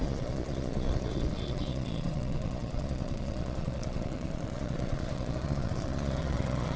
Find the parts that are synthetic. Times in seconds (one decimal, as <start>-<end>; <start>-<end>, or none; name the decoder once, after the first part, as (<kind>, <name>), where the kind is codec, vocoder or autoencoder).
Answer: 0.0-6.8 (vocoder, Vocos)